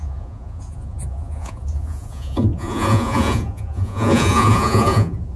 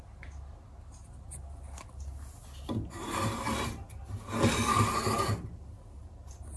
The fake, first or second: first